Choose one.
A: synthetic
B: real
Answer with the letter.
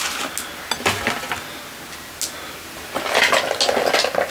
B